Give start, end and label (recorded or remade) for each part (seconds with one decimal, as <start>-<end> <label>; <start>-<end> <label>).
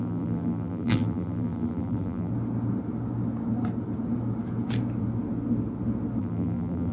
0.0-2.3 remade; 2.3-6.2 recorded; 6.2-6.9 remade